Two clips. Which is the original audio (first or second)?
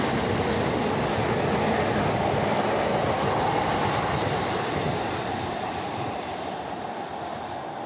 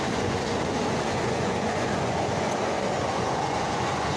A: first